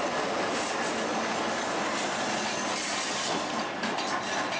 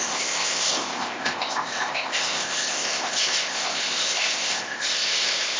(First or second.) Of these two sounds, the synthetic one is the second